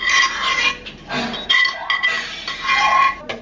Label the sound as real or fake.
real